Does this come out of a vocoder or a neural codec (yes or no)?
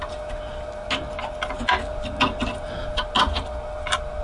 no